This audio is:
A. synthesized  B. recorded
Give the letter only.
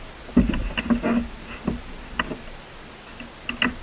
B